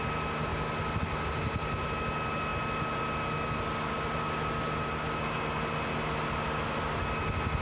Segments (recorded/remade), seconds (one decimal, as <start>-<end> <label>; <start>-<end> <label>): 0.0-7.6 recorded